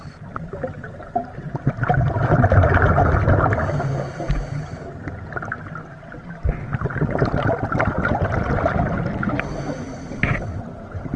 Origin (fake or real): real